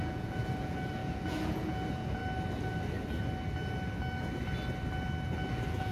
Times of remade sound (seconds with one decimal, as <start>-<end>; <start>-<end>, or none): 0.0-2.2; 5.5-5.9